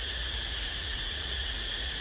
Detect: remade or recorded remade